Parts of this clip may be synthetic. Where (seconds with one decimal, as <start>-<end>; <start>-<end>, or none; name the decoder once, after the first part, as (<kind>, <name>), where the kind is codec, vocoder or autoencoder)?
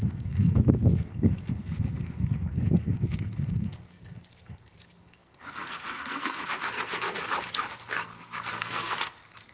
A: 0.0-7.2 (codec, SNAC); 7.7-9.5